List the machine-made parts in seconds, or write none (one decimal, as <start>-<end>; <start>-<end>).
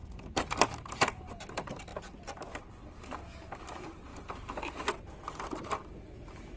0.6-1.9; 3.6-6.6